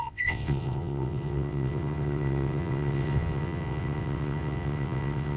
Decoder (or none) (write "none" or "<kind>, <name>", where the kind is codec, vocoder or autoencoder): vocoder, WaveNeXt